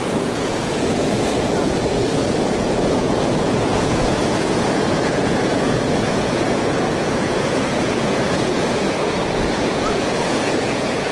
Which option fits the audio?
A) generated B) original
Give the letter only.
A